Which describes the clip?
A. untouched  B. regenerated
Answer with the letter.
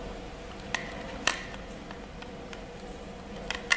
A